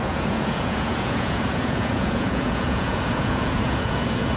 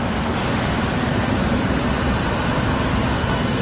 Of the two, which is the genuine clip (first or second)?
second